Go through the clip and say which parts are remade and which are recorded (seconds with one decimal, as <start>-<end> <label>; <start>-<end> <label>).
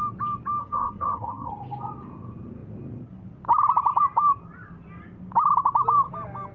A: 0.0-0.6 recorded; 0.6-1.5 remade; 1.5-6.5 recorded